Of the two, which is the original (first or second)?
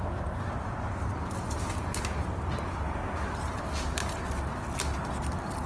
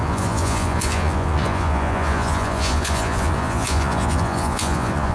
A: first